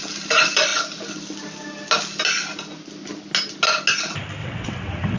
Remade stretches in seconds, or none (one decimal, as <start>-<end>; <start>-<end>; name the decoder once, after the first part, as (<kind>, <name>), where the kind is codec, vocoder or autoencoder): 4.4-5.2 (vocoder, WaveNeXt)